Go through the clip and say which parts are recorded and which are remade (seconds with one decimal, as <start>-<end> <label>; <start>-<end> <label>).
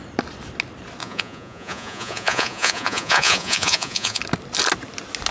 0.0-1.0 recorded; 1.0-4.2 remade; 4.2-5.3 recorded